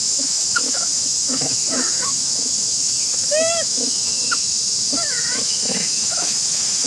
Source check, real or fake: fake